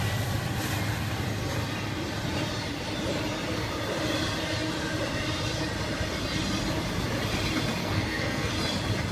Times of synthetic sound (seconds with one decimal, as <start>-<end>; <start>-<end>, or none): 7.8-8.5